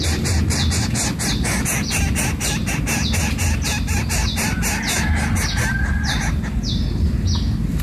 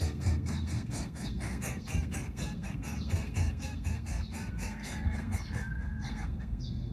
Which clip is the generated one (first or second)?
second